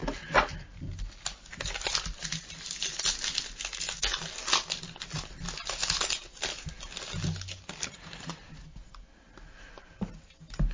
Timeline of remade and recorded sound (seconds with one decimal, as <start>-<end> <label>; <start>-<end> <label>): 0.0-10.7 recorded